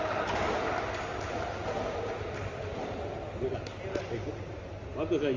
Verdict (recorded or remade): recorded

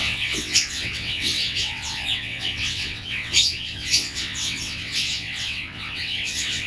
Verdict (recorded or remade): remade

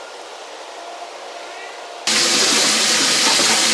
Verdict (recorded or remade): recorded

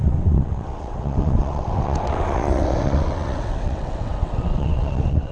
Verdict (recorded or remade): remade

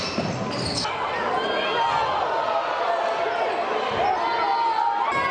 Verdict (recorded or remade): recorded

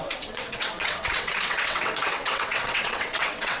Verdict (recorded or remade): remade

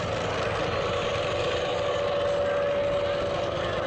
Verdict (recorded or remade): recorded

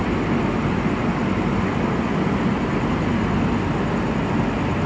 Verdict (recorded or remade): recorded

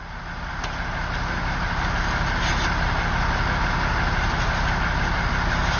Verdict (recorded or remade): recorded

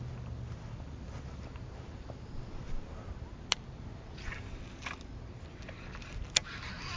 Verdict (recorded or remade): recorded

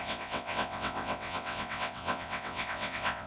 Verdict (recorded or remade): remade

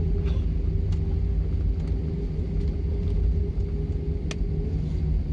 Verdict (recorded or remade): recorded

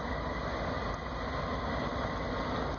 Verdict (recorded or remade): recorded